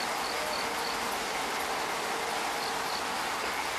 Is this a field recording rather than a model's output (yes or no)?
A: yes